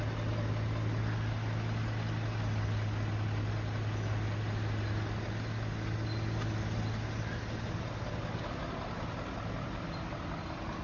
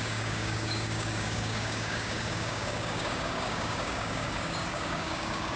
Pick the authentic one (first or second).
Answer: first